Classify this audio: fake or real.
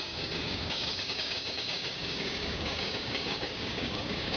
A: fake